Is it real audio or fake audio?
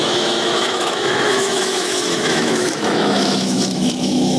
fake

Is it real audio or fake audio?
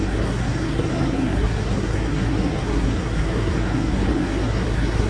fake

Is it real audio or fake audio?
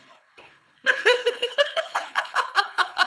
fake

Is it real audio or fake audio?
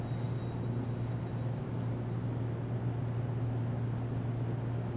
real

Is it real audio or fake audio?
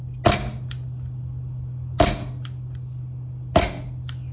real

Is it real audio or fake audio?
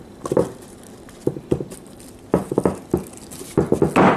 real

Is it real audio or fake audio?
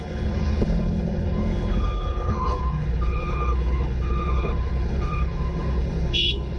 fake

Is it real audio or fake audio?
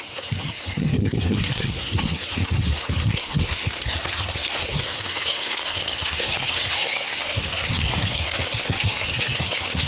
fake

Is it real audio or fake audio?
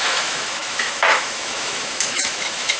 fake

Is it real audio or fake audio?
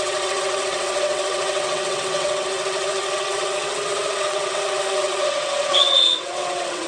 fake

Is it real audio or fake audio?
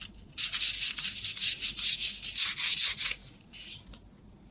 real